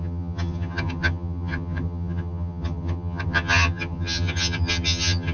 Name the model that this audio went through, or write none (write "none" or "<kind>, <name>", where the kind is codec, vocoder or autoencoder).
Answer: vocoder, HiFi-GAN